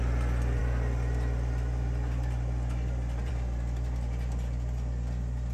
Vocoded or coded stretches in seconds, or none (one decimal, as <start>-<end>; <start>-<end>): none